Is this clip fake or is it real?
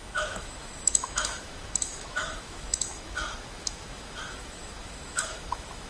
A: fake